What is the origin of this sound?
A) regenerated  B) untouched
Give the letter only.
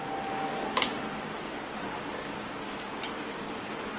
B